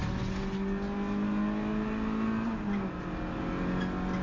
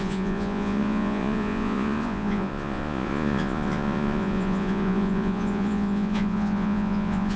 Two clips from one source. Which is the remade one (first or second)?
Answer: second